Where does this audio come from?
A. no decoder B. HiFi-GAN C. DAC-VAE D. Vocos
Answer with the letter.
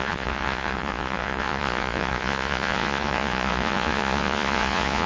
D